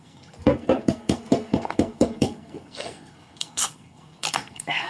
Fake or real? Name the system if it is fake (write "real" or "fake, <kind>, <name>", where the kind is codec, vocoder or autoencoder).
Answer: fake, codec, SNAC